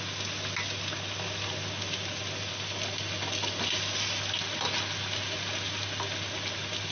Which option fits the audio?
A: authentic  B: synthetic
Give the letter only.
A